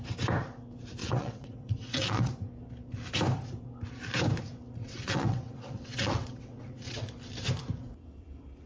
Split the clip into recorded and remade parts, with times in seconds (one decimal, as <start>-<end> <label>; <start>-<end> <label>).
0.0-1.0 recorded; 1.0-2.3 remade; 2.3-4.8 recorded; 4.8-7.0 remade; 7.0-8.7 recorded